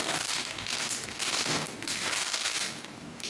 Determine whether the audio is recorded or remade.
remade